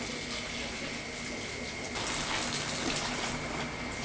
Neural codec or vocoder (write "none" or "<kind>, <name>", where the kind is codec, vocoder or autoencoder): none